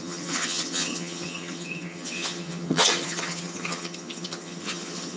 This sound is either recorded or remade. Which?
remade